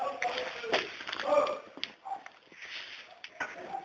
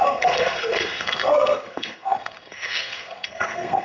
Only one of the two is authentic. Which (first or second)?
first